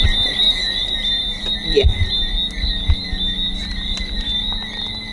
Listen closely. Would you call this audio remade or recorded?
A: recorded